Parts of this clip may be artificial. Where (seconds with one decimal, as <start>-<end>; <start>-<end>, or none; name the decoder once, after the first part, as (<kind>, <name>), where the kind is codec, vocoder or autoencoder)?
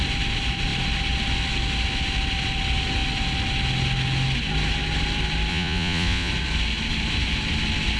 5.5-6.3 (vocoder, Vocos)